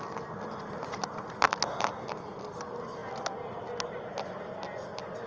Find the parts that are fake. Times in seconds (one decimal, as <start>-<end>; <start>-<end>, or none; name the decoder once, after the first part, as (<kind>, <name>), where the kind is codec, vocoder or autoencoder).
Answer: none